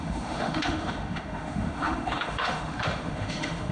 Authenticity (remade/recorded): remade